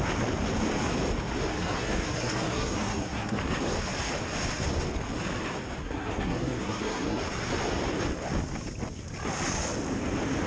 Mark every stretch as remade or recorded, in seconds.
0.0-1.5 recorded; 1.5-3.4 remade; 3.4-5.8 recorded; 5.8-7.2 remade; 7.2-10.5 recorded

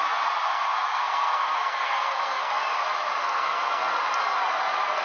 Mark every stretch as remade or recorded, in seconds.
0.0-0.4 recorded; 0.4-2.5 remade; 2.5-3.2 recorded; 3.2-3.8 remade; 3.8-5.0 recorded

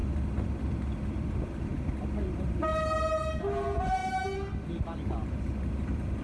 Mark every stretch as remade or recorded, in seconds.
0.0-2.3 recorded; 2.3-4.0 remade; 4.0-5.7 recorded; 5.7-6.2 remade